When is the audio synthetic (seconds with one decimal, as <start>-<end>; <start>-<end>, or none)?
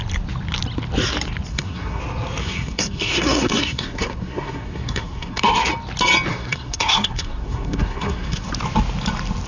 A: 1.5-2.0; 2.4-5.7; 6.3-8.5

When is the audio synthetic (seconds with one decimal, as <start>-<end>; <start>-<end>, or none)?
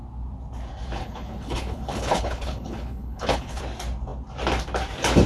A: 1.0-3.6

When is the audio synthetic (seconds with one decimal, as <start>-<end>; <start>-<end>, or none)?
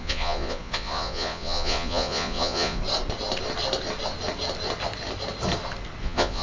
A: 0.0-2.8; 6.0-6.4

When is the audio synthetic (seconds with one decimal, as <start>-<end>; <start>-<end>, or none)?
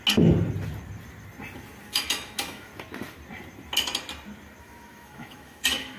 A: 1.8-2.7; 4.6-6.0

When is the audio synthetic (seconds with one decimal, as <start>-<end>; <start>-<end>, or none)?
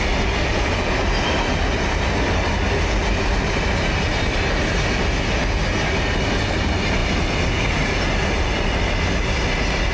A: none